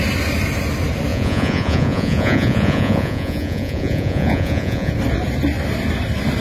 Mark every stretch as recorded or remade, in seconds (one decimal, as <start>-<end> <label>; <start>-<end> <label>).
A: 0.0-1.1 recorded; 1.1-4.9 remade; 4.9-6.4 recorded